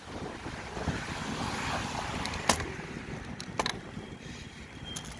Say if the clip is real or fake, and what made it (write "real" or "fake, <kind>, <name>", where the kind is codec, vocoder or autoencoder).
real